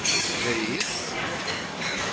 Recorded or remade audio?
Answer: remade